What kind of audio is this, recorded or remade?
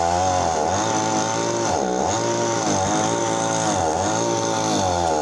recorded